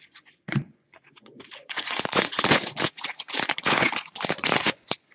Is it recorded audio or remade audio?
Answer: remade